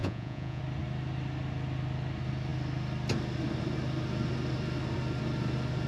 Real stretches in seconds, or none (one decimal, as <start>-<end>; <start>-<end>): 0.6-5.9